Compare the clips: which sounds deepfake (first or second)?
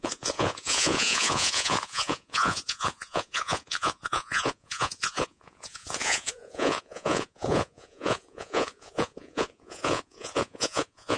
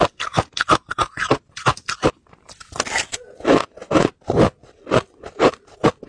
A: first